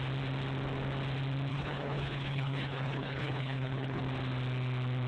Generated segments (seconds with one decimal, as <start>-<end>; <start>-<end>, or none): 1.5-4.0